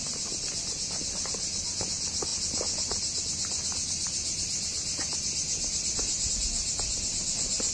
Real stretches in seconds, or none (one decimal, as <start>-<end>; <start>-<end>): 0.0-7.7